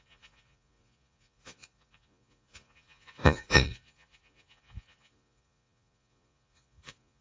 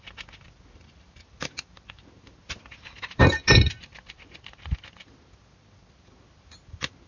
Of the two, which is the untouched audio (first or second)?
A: second